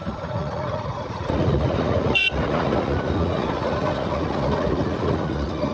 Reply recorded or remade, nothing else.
remade